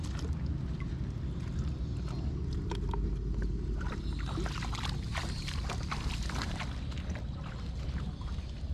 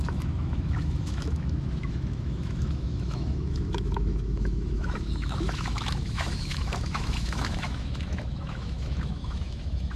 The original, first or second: first